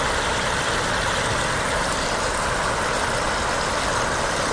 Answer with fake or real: real